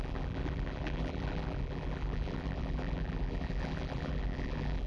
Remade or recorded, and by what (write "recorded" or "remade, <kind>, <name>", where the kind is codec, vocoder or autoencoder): remade, vocoder, BigVGAN v2